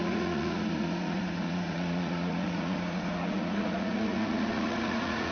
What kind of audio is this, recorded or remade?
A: remade